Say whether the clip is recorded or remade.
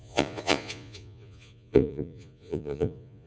remade